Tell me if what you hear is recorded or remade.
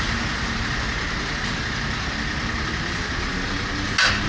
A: recorded